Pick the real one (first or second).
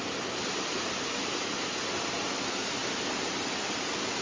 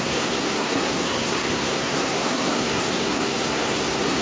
first